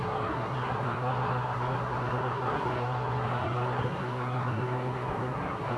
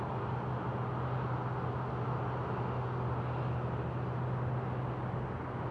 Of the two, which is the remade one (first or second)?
first